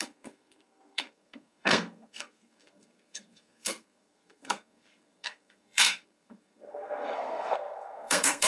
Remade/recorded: remade